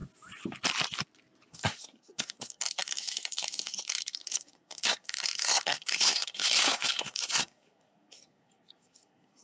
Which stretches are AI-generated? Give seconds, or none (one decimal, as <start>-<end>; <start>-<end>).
1.5-9.4